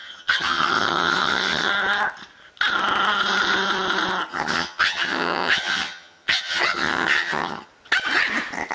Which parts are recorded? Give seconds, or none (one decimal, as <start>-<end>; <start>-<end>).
1.7-4.3; 7.7-8.7